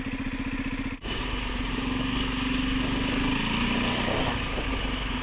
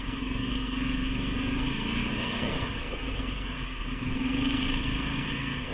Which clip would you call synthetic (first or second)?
second